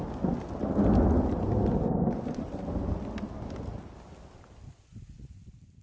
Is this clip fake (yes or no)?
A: no